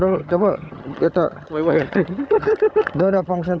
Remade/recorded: remade